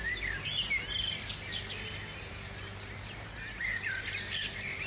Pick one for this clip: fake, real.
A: real